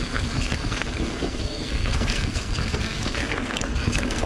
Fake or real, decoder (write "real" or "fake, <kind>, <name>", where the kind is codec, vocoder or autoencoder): fake, codec, SNAC